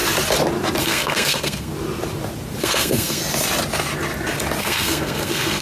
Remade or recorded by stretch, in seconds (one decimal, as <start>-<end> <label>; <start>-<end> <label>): 0.0-0.8 recorded; 0.8-1.7 remade; 1.7-2.6 recorded; 2.6-3.2 remade; 3.2-4.6 recorded; 4.6-5.6 remade